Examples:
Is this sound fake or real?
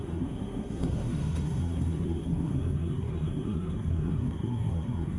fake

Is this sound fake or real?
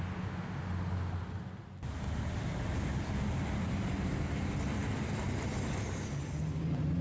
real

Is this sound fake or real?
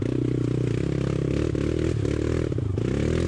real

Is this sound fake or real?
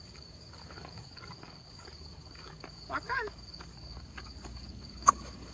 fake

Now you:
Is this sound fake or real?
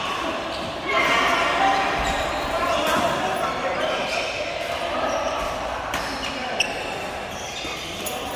real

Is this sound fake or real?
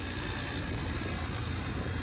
real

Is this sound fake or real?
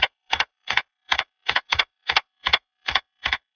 fake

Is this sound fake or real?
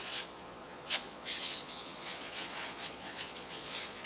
fake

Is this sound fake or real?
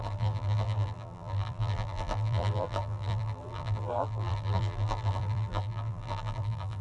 fake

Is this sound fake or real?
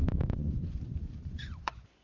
fake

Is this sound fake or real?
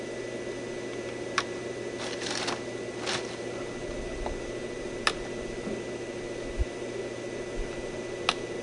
real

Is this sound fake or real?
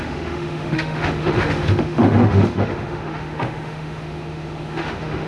fake